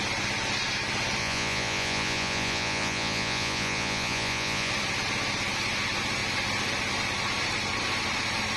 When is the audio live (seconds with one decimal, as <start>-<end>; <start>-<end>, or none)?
0.0-1.2; 4.7-8.6